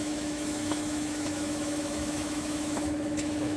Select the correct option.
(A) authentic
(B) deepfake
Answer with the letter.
B